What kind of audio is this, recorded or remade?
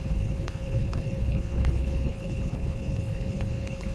remade